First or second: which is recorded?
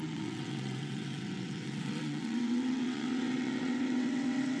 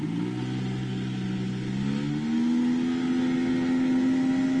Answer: second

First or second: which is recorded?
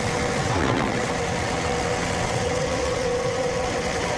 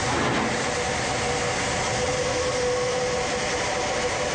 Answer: second